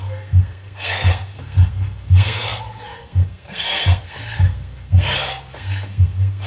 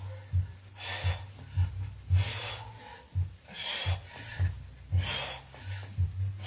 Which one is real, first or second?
second